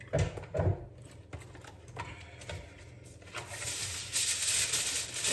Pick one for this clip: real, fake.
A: real